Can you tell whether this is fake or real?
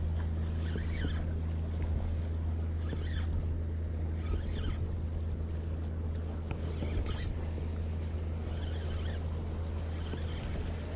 real